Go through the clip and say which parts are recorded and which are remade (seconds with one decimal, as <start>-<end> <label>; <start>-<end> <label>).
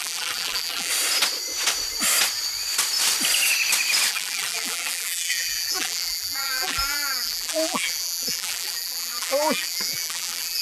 0.0-0.9 remade; 0.9-4.1 recorded; 4.1-10.6 remade